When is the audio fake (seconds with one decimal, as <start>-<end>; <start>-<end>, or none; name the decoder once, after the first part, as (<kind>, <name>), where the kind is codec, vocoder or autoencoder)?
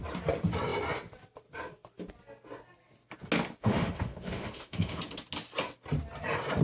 3.6-5.0 (autoencoder, DAC-VAE)